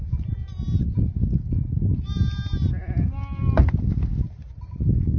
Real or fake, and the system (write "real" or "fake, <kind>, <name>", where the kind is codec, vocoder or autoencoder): real